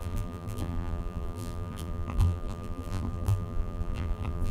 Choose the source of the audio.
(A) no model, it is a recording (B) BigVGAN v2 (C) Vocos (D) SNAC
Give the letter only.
B